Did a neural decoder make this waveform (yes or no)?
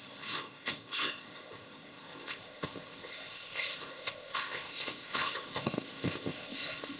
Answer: yes